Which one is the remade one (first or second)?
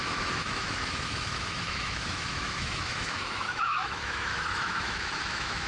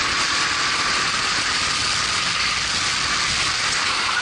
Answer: first